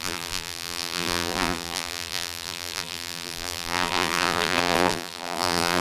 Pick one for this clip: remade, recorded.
remade